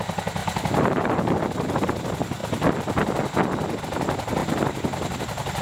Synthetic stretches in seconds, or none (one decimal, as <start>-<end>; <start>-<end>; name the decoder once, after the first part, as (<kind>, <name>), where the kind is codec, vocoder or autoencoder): 0.4-1.4 (vocoder, BigVGAN v2)